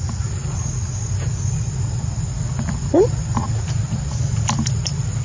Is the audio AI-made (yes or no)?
no